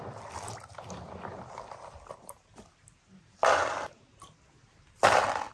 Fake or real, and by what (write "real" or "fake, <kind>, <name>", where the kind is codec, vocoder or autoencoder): real